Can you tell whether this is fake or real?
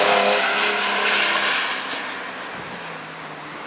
real